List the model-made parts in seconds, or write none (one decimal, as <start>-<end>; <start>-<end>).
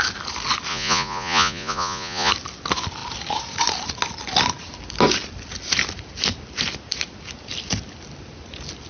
0.7-2.3